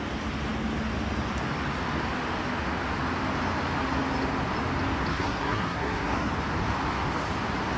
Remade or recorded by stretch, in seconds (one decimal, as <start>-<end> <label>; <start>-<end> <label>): 0.0-5.1 recorded; 5.1-6.3 remade; 6.3-7.8 recorded